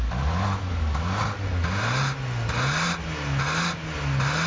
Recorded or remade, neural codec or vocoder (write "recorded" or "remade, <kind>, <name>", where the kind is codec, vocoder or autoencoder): recorded